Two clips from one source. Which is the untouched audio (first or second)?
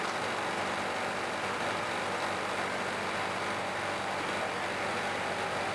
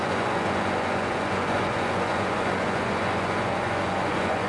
first